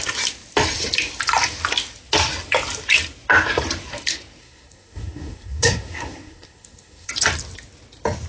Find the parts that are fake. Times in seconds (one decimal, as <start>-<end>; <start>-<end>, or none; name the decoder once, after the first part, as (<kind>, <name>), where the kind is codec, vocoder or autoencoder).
4.4-7.1 (codec, SNAC)

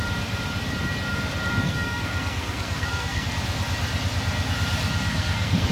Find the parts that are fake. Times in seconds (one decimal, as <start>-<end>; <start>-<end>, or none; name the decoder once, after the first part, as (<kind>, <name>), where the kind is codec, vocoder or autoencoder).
1.6-3.3 (codec, SNAC); 5.1-5.7

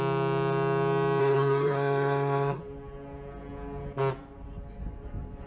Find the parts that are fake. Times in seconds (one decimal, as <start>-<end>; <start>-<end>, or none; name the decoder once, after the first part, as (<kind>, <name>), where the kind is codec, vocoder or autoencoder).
1.2-2.6 (codec, SNAC)